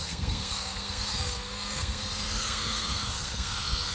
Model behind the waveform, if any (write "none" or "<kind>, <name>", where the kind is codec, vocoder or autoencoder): codec, SNAC